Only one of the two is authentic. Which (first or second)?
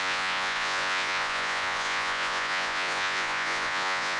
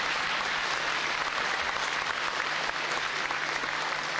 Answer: second